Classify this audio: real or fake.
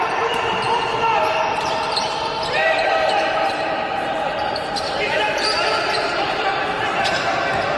fake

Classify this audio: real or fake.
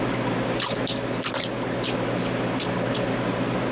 real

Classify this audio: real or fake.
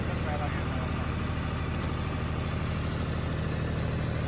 real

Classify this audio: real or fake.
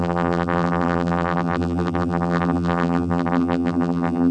fake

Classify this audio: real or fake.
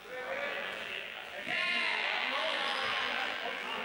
fake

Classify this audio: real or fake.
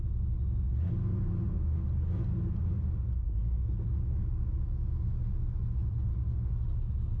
real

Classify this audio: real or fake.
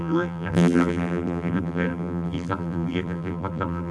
fake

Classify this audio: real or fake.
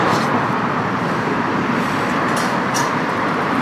fake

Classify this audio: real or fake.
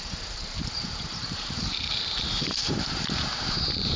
fake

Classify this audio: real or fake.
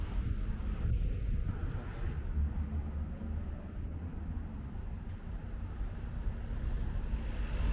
real